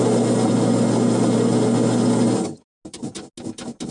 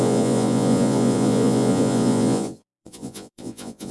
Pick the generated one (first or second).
second